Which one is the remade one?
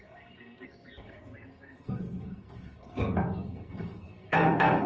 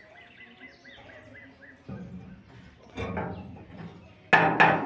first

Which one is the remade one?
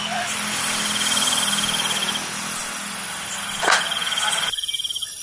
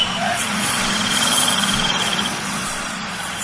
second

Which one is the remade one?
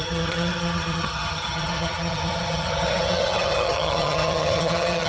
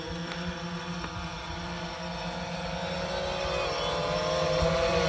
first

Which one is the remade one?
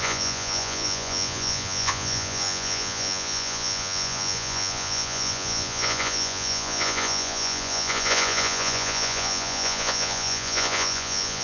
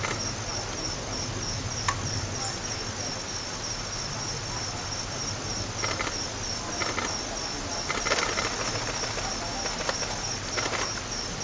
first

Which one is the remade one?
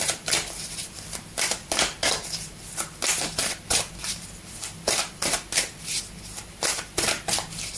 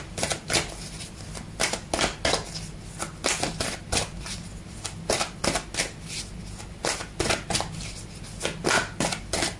first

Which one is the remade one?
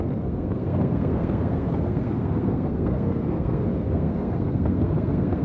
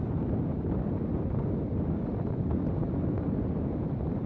first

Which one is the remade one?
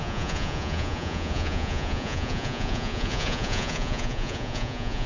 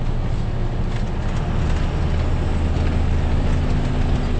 first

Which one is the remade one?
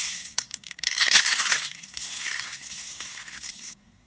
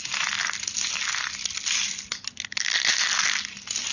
first